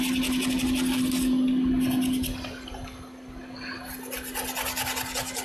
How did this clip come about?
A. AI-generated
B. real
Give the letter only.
B